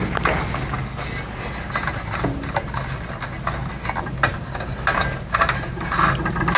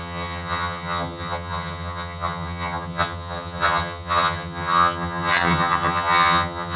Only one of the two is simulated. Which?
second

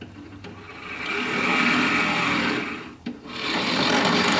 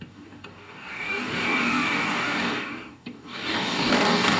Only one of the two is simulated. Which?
second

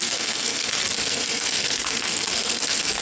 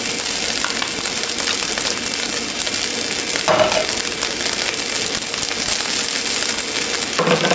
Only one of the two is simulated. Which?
first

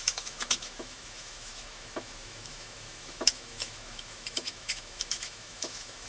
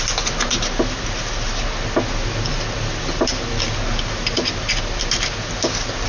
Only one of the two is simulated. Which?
first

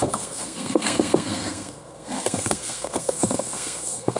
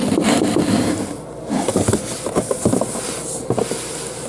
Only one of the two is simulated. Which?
first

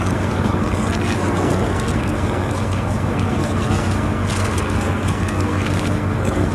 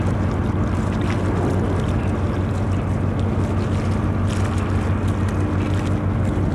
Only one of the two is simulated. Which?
first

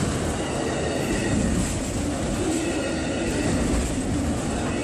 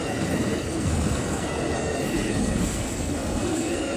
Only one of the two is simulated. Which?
second